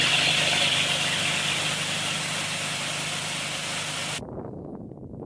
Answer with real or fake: real